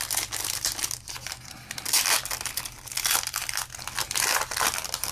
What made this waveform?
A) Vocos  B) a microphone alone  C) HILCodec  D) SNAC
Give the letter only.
B